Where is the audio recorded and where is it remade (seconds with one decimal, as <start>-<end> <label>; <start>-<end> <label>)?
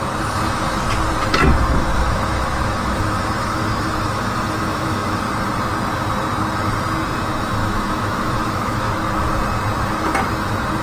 0.0-1.9 recorded; 1.9-5.2 remade; 5.2-7.6 recorded; 7.6-9.3 remade; 9.3-10.8 recorded